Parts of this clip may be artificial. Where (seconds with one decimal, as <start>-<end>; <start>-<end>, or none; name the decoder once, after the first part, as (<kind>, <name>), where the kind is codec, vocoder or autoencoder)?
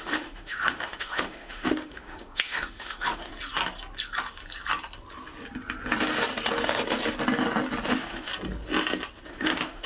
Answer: 0.0-3.3 (autoencoder, DAC-VAE); 7.9-8.3; 9.3-9.9